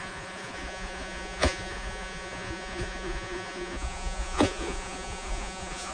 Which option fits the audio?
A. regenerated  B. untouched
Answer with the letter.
A